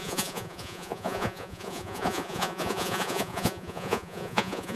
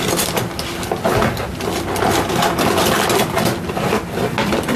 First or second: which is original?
second